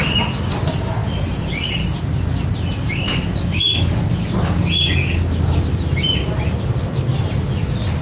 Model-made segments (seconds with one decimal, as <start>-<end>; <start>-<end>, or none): 3.1-4.3